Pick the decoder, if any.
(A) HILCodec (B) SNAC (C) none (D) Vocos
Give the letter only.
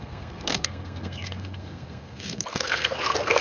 B